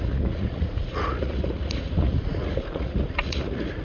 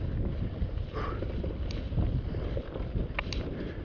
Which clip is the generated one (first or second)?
first